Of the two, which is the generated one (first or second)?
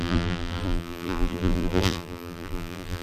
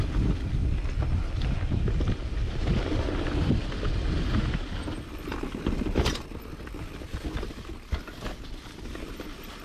first